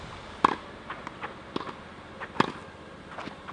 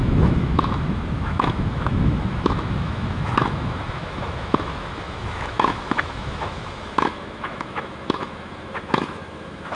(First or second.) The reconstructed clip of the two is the second